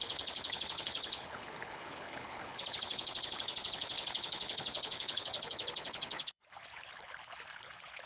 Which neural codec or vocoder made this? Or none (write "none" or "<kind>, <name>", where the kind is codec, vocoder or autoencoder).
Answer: codec, HILCodec